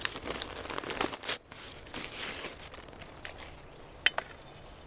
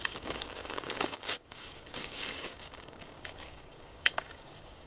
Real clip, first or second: first